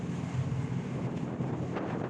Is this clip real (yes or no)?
no